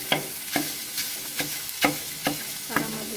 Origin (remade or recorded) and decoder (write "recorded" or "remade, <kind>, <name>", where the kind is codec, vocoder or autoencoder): remade, autoencoder, DAC-VAE